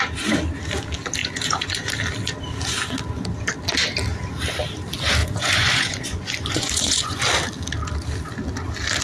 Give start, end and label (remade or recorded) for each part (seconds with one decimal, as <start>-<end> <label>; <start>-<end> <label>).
0.0-1.2 recorded; 1.2-1.9 remade; 1.9-5.2 recorded; 5.2-7.2 remade; 7.2-9.0 recorded